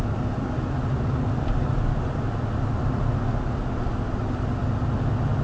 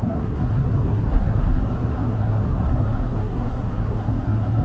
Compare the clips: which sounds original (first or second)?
first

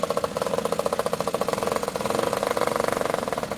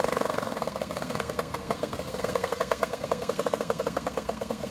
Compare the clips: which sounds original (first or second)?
first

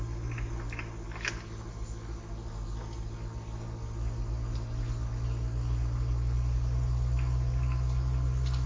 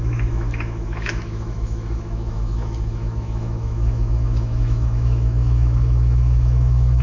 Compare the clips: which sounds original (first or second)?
first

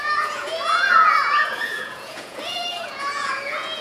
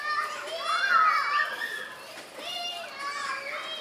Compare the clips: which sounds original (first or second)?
second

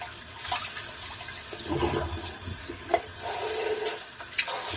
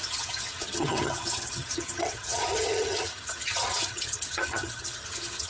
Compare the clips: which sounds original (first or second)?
first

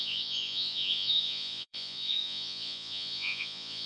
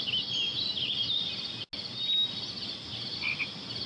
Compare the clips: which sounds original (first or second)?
second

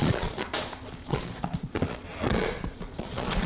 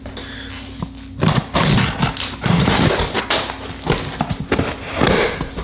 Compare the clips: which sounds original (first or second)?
second